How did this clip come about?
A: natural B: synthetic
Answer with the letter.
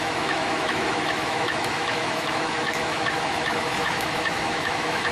B